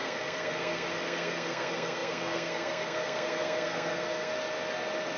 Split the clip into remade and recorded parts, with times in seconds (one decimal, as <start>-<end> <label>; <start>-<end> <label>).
0.0-4.3 remade; 4.3-5.2 recorded